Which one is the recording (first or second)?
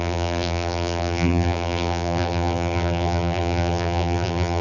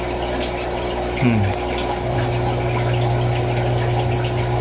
second